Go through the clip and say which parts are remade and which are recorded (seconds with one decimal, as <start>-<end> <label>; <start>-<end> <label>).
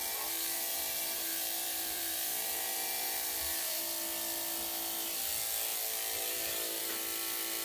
0.0-3.8 remade; 3.8-7.6 recorded